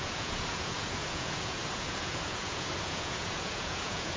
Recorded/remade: remade